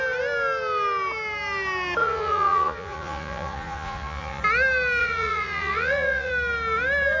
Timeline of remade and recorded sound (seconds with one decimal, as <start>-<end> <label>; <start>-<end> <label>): 0.0-2.0 recorded; 2.0-4.4 remade; 4.4-5.0 recorded; 5.0-6.3 remade; 6.3-7.2 recorded